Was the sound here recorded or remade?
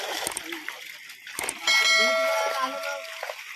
recorded